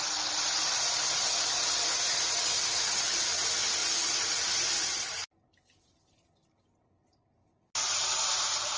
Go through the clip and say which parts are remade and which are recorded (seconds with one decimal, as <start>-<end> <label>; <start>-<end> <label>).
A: 0.0-8.8 recorded